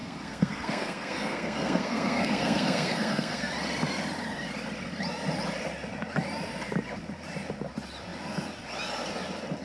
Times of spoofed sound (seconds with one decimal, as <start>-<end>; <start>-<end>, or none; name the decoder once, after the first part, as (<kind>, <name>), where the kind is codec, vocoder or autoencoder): 0.0-3.5 (codec, SNAC)